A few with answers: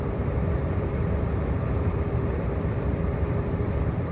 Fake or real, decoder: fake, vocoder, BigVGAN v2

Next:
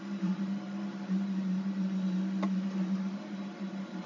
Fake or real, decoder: real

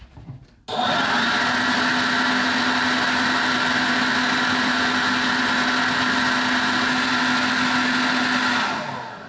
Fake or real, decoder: real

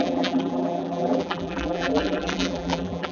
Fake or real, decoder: fake, vocoder, BigVGAN v2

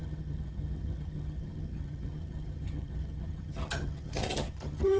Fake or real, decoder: fake, vocoder, HiFi-GAN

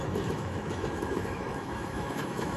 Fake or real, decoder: fake, autoencoder, DAC-VAE